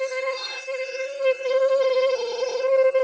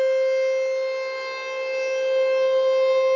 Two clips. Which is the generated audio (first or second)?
first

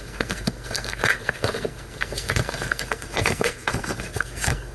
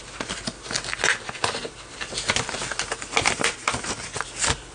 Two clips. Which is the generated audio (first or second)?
first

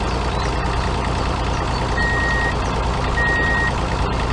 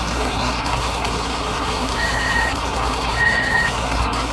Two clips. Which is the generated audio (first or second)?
second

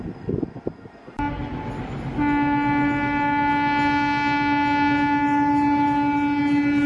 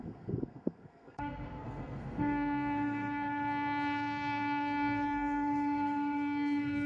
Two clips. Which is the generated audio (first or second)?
second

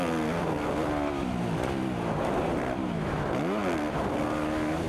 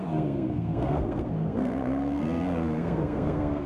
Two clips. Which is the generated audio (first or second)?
second